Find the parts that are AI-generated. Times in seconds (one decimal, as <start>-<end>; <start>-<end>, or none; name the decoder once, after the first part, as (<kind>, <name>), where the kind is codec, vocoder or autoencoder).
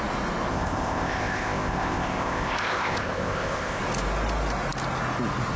0.5-3.8 (codec, ZipCodec)